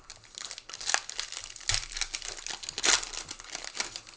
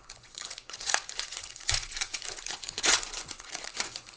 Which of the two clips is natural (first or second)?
first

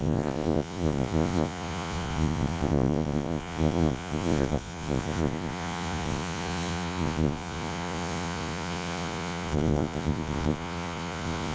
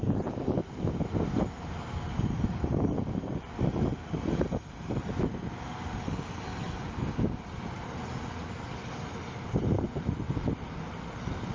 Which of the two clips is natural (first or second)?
second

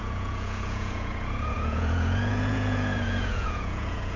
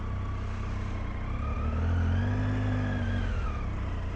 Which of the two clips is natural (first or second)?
second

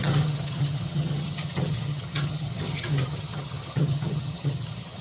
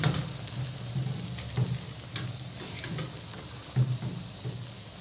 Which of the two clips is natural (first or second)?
second